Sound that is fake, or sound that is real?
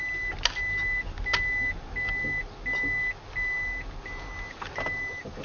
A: real